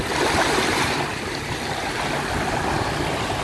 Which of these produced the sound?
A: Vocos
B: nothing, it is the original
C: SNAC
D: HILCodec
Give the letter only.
B